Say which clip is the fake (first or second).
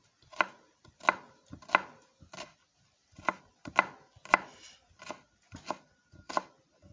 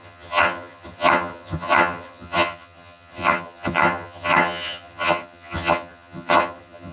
second